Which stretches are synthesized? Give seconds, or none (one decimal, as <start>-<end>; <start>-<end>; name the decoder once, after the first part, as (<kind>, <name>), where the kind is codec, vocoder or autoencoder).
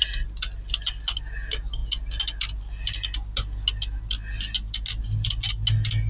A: none